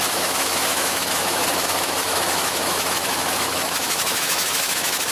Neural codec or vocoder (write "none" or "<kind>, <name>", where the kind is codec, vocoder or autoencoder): autoencoder, DAC-VAE